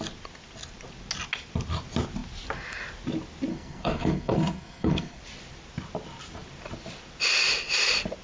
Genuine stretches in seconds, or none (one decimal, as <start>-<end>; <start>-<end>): 0.0-3.5; 5.2-8.2